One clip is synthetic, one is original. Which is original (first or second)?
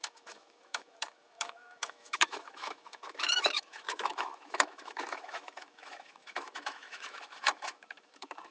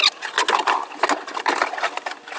second